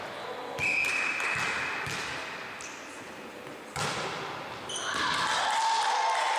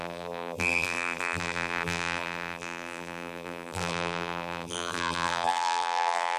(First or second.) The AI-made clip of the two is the second